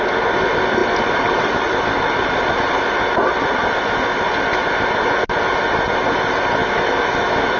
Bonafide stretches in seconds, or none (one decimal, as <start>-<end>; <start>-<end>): 0.0-6.6